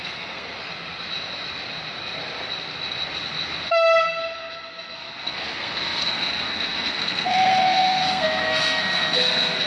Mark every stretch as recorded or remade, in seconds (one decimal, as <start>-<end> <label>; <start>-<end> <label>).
0.0-0.6 remade; 0.6-4.0 recorded; 4.0-9.7 remade